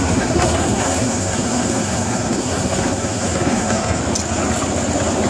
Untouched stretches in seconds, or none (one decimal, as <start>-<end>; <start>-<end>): 4.0-5.3